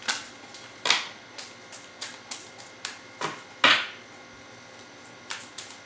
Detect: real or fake real